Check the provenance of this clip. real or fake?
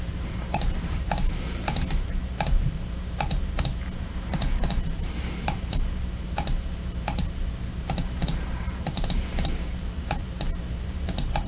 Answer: fake